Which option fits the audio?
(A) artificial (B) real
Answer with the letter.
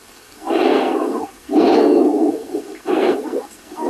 A